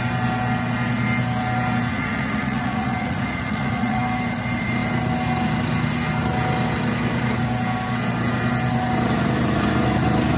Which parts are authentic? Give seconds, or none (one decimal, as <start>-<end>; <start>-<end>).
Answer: 0.0-1.9; 4.0-10.4